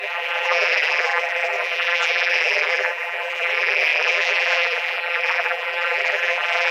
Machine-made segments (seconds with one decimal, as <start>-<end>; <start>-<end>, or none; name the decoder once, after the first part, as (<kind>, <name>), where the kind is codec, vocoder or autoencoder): 0.0-6.7 (vocoder, BigVGAN v2)